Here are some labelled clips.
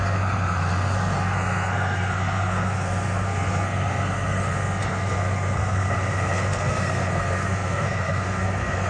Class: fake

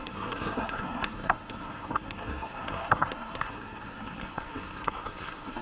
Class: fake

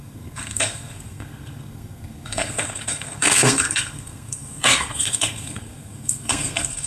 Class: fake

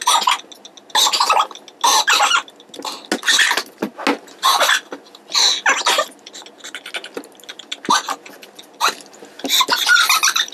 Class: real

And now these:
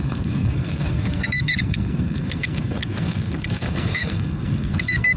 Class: fake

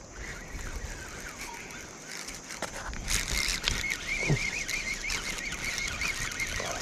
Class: real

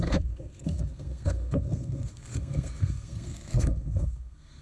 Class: fake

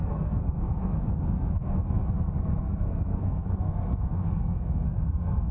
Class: fake